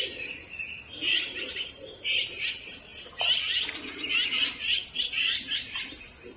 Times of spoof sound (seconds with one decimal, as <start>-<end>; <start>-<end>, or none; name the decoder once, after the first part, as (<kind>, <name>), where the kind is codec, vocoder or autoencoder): 0.0-6.4 (vocoder, BigVGAN v2)